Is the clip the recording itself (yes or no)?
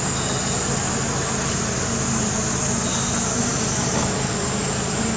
yes